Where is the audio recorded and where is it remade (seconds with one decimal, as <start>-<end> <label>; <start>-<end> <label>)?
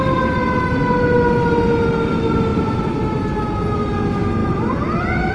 0.0-2.5 recorded; 2.5-3.0 remade; 3.0-4.4 recorded; 4.4-5.3 remade